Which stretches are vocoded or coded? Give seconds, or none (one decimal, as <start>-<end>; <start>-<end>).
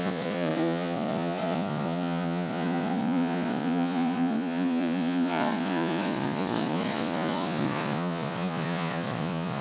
0.0-9.6